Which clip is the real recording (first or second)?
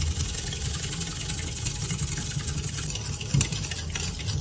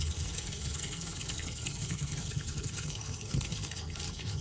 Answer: first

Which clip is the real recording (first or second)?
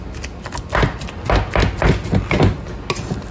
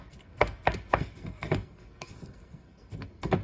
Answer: first